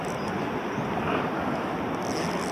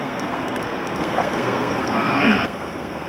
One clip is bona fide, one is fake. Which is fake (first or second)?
second